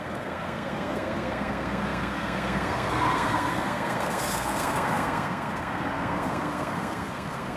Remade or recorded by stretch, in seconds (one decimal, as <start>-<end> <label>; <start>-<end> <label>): 0.0-7.6 remade